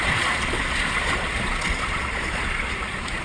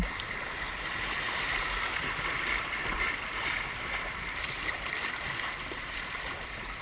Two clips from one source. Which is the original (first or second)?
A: second